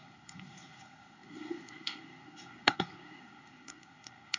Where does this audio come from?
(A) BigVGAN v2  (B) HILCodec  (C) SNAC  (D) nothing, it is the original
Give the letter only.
C